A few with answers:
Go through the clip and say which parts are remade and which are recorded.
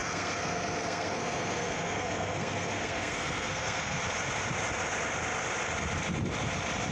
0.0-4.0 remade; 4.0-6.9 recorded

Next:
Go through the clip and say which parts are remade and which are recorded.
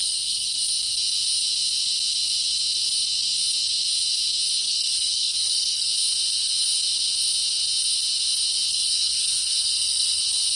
0.0-0.5 remade; 0.5-4.6 recorded; 4.6-5.9 remade; 5.9-8.7 recorded; 8.7-10.2 remade; 10.2-10.6 recorded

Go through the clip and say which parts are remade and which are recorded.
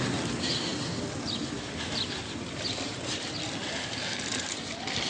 0.0-5.1 recorded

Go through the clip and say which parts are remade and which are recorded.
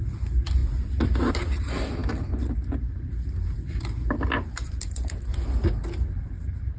0.0-0.6 remade; 0.6-1.3 recorded; 1.3-2.0 remade; 2.0-6.1 recorded; 6.1-6.8 remade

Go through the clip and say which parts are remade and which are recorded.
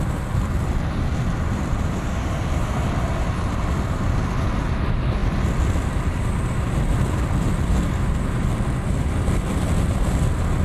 0.0-10.6 recorded